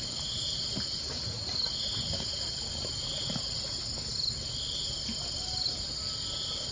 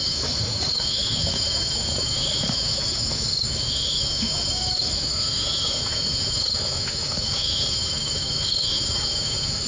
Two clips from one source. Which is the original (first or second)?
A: first